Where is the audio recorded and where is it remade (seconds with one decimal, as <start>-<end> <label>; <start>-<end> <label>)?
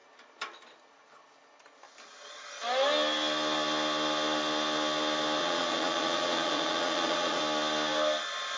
0.0-5.4 recorded; 5.4-7.4 remade; 7.4-8.6 recorded